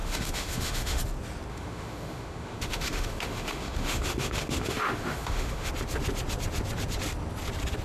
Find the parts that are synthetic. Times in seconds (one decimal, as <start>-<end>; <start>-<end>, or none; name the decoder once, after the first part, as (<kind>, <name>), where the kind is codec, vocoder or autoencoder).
0.0-1.0 (autoencoder, DAC-VAE); 1.5-5.7